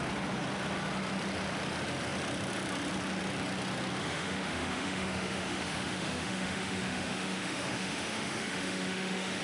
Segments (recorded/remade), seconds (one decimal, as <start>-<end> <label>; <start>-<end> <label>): 0.0-4.0 recorded; 4.0-9.4 remade